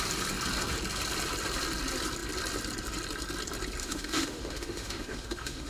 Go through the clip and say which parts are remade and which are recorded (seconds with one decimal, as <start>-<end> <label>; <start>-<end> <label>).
0.0-3.8 recorded; 3.8-5.7 remade

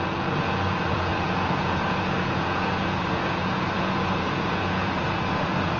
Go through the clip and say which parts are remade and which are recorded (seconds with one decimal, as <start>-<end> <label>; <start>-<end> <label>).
0.0-5.8 remade

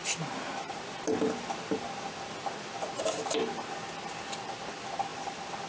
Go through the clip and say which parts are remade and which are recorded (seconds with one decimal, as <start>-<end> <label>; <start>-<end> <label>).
0.0-5.7 recorded

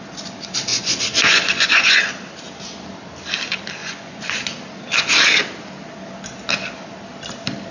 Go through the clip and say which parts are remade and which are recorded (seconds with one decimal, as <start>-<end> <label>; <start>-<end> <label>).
0.0-0.7 recorded; 0.7-2.0 remade; 2.0-3.8 recorded; 3.8-4.4 remade; 4.4-7.7 recorded

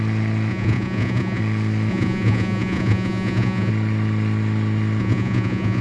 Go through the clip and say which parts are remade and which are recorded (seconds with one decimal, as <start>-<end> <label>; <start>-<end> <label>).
0.0-0.5 recorded; 0.5-1.4 remade; 1.4-1.9 recorded; 1.9-3.7 remade; 3.7-5.0 recorded; 5.0-5.8 remade

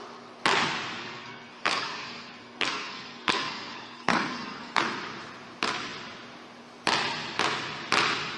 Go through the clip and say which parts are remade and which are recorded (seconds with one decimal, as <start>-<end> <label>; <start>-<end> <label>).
0.0-1.0 recorded; 1.0-4.8 remade; 4.8-8.4 recorded